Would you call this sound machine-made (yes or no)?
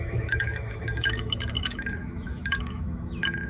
yes